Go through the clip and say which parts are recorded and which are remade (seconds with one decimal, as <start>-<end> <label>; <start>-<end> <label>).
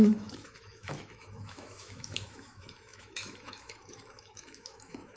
0.0-5.2 remade